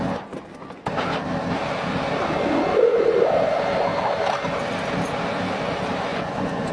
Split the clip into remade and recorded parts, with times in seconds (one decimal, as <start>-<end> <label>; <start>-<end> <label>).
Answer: 0.0-6.1 recorded; 6.1-6.7 remade